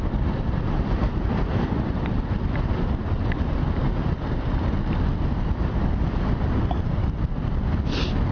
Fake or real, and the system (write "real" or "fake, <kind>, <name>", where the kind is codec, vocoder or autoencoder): fake, vocoder, BigVGAN v2